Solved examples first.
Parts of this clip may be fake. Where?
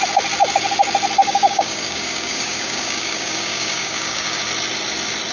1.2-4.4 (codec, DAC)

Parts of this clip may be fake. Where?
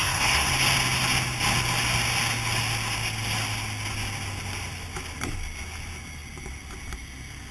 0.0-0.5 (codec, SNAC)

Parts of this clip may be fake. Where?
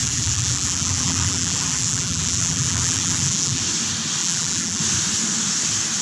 0.0-3.6 (vocoder, BigVGAN v2); 4.2-4.8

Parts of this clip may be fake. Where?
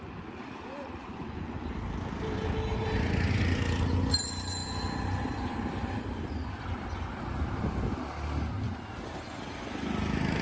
none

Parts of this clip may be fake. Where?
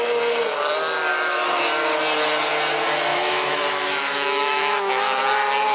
1.1-1.6 (autoencoder, DAC-VAE); 3.1-5.2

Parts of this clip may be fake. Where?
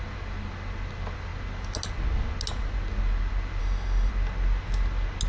3.6-4.1 (autoencoder, DAC-VAE)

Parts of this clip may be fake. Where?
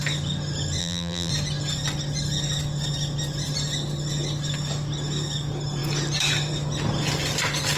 0.8-1.3 (vocoder, BigVGAN v2)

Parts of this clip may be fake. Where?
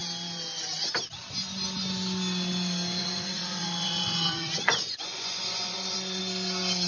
3.0-6.2 (vocoder, Vocos)